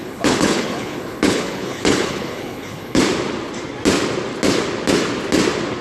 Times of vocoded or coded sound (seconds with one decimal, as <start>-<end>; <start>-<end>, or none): 0.0-3.0